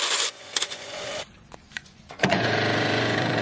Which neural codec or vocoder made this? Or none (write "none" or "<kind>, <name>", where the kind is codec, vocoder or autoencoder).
vocoder, Vocos